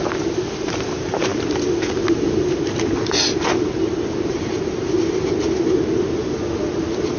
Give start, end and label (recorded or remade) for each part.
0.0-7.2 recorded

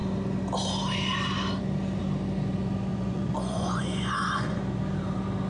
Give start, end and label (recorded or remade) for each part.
0.0-2.9 recorded; 2.9-4.6 remade; 4.6-5.5 recorded

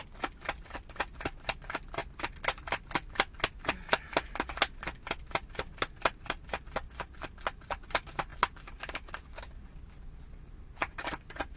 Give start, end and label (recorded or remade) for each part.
0.0-11.6 recorded

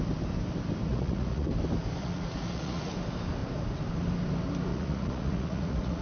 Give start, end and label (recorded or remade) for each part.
0.0-0.9 recorded; 0.9-1.5 remade; 1.5-2.0 recorded; 2.0-2.9 remade; 2.9-4.7 recorded; 4.7-6.0 remade

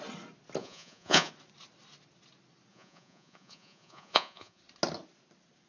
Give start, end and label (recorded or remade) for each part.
0.0-0.6 recorded; 0.6-1.3 remade; 1.3-2.7 recorded; 2.7-4.6 remade; 4.6-5.7 recorded

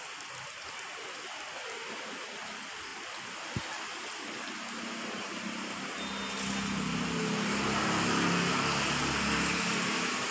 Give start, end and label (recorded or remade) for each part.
0.0-10.3 recorded

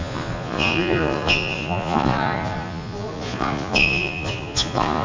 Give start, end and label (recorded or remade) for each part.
0.0-5.0 remade

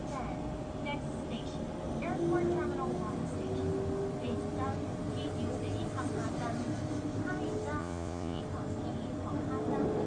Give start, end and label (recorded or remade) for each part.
0.0-7.8 recorded; 7.8-8.4 remade; 8.4-10.1 recorded